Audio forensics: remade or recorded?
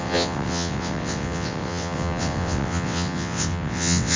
remade